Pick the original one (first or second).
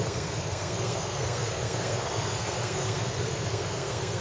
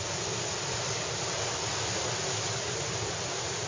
second